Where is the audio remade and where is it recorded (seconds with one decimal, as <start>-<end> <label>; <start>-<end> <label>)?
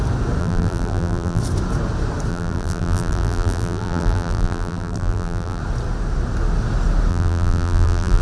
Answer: 0.0-0.4 recorded; 0.4-1.4 remade; 1.4-2.3 recorded; 2.3-5.6 remade; 5.6-7.1 recorded; 7.1-8.2 remade